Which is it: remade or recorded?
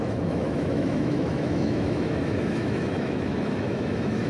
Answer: remade